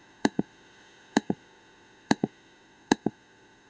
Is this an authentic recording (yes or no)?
no